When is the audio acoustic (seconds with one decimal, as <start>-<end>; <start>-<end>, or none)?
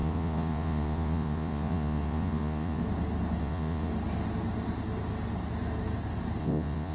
2.8-3.4; 3.9-6.4